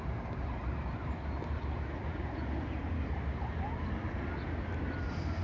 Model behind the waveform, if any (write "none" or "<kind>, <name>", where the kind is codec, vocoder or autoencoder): none